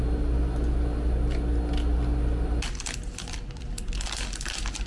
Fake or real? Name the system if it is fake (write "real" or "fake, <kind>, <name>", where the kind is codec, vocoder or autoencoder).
real